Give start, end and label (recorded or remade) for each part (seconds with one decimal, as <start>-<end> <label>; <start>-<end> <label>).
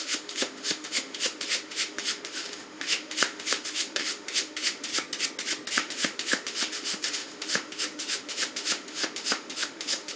0.0-4.9 remade; 4.9-5.7 recorded; 5.7-10.2 remade